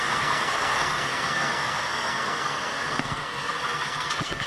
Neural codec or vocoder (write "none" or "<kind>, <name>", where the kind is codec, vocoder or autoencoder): codec, SNAC